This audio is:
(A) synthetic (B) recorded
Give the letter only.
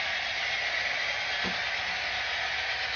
B